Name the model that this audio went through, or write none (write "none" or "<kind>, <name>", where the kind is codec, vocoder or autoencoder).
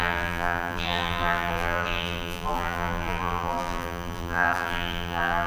vocoder, BigVGAN v2